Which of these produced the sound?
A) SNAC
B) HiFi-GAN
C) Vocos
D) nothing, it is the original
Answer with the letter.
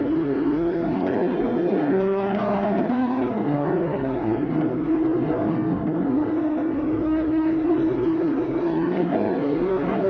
A